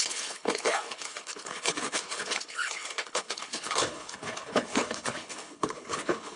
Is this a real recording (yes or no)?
no